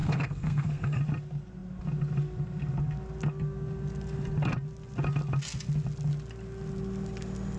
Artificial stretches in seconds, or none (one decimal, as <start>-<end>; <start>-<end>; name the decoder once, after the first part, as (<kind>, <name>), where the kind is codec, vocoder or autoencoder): 0.0-1.0 (codec, SNAC)